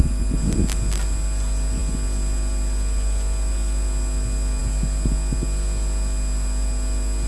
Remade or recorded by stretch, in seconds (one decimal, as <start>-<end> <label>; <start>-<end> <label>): 0.0-7.3 recorded